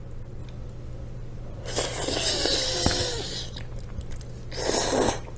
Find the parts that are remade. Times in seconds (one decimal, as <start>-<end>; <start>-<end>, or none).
none